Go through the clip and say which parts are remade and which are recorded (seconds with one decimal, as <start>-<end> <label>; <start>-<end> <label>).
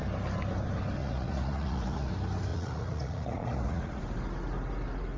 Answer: 0.0-1.0 recorded; 1.0-2.1 remade; 2.1-2.5 recorded; 2.5-4.0 remade; 4.0-5.2 recorded